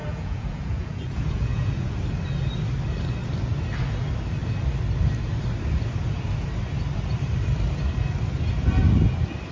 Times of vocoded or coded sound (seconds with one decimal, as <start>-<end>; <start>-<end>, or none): 0.0-1.9